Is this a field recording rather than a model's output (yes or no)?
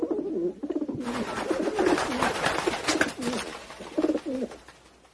yes